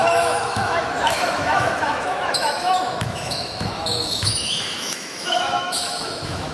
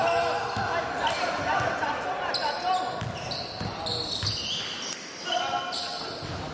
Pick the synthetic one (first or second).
first